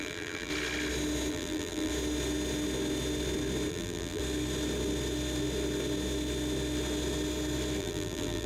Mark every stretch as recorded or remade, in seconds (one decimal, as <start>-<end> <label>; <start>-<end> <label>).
0.0-0.5 remade; 0.5-1.3 recorded; 1.3-1.9 remade; 1.9-3.7 recorded; 3.7-4.2 remade; 4.2-7.8 recorded; 7.8-8.5 remade